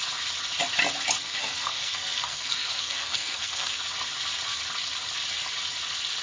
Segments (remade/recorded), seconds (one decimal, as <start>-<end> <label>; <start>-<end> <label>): 0.0-1.2 recorded; 1.2-3.8 remade; 3.8-6.2 recorded